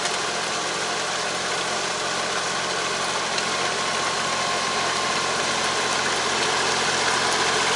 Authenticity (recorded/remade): recorded